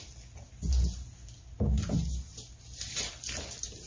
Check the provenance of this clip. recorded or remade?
recorded